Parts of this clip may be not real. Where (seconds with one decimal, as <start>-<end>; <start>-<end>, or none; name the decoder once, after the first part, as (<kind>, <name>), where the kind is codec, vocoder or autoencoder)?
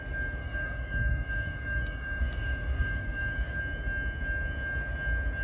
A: 0.4-3.6 (codec, DAC)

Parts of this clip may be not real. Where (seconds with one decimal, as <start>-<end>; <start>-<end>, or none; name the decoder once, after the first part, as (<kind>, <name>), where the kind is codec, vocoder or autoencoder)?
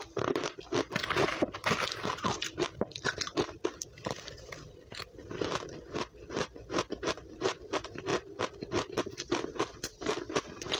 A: none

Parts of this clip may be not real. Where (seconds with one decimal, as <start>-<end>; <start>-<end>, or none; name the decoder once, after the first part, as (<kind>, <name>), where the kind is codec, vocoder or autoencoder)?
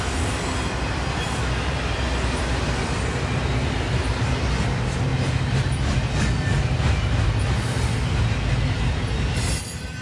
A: none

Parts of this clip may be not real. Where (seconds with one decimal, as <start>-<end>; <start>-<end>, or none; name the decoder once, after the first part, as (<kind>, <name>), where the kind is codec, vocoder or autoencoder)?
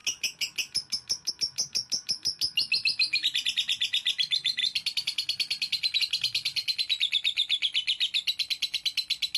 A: none